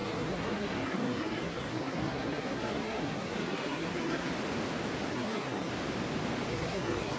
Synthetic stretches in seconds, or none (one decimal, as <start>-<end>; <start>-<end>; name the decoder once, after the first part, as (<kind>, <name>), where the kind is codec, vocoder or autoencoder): 0.0-4.3 (codec, SNAC); 5.1-5.7; 6.5-7.2